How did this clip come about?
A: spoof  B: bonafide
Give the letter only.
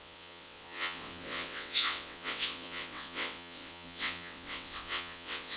A